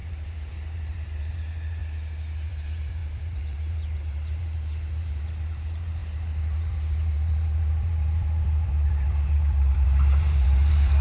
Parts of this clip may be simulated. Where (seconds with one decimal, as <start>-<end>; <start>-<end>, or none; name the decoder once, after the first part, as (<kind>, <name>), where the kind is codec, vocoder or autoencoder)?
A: 0.0-1.8 (vocoder, BigVGAN v2); 2.5-11.0